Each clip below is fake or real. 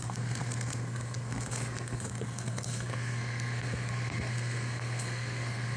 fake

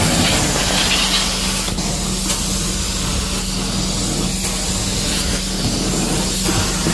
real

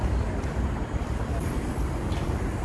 real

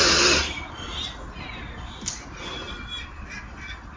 real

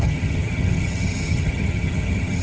fake